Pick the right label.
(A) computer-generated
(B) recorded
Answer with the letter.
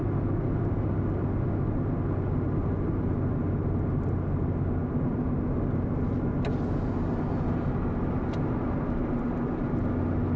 B